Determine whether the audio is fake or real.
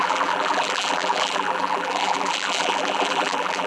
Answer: fake